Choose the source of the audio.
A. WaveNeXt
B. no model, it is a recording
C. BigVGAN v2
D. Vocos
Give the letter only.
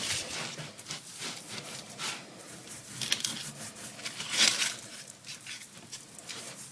C